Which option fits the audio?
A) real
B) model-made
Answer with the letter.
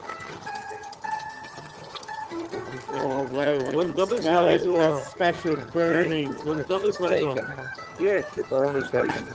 B